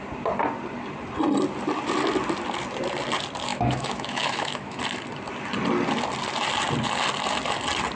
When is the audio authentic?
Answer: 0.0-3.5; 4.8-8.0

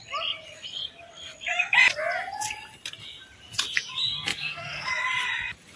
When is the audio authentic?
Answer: 0.0-4.3; 4.9-5.8

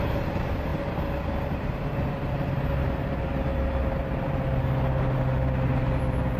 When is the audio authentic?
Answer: 0.0-6.4

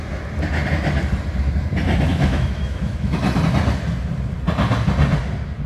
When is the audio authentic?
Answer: 0.0-2.1; 3.2-5.7